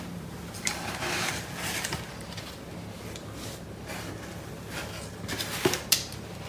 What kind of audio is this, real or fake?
real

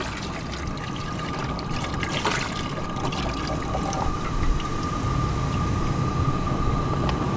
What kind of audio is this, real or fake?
real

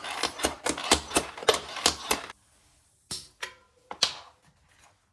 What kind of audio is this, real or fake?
real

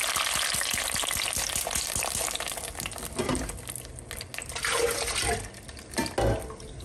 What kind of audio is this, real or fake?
real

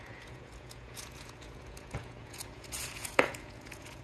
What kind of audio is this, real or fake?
fake